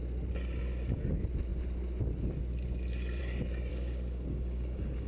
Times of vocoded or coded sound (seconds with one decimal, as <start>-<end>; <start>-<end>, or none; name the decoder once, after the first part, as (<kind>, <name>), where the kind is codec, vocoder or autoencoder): 3.7-5.1 (codec, DAC)